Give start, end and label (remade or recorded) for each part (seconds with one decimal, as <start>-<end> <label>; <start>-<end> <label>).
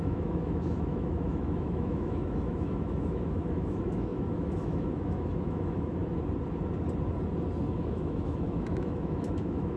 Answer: 0.0-6.0 remade; 6.0-7.7 recorded; 7.7-9.8 remade